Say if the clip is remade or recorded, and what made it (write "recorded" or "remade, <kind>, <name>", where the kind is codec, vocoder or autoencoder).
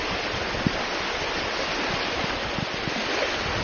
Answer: recorded